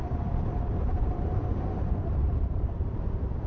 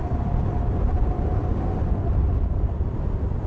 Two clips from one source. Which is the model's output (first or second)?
first